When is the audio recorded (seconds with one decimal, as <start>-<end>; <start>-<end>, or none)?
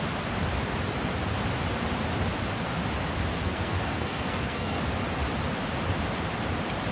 0.0-3.3; 4.8-6.9